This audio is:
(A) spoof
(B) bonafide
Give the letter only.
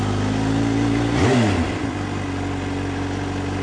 B